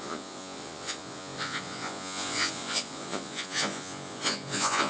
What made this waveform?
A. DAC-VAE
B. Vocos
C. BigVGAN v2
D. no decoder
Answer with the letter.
B